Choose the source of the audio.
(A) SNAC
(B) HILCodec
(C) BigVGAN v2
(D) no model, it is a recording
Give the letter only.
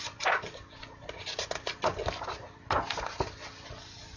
D